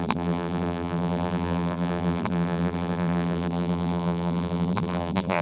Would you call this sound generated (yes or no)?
yes